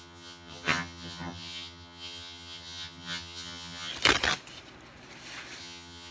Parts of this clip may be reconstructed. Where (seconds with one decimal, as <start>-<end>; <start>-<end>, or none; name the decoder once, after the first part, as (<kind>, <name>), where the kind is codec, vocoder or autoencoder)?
0.0-3.9 (vocoder, HiFi-GAN); 5.6-6.1